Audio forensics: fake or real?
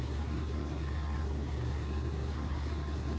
fake